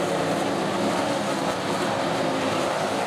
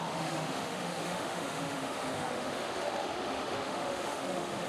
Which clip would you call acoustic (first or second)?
first